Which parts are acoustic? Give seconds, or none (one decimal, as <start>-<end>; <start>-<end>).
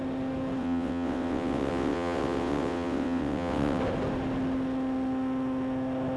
0.0-0.6; 3.8-6.2